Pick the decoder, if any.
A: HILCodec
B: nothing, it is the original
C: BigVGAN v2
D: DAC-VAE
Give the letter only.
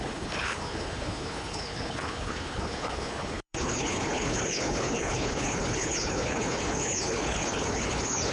A